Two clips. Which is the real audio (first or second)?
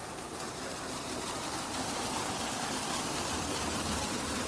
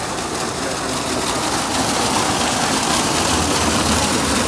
second